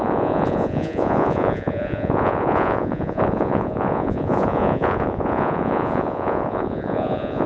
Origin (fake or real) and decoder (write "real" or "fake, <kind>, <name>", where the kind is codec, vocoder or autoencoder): fake, vocoder, Vocos